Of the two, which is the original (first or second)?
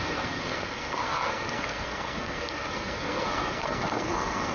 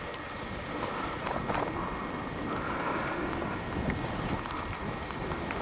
second